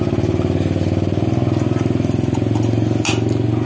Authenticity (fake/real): real